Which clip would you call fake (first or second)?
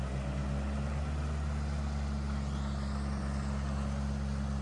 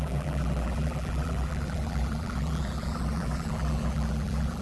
second